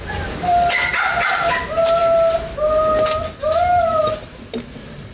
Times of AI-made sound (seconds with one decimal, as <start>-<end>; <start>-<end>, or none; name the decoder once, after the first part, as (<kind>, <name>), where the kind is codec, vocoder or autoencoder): none